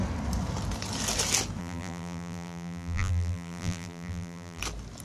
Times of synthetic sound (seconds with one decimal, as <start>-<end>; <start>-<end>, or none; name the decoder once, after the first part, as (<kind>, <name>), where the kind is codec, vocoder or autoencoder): 1.6-4.6 (vocoder, BigVGAN v2)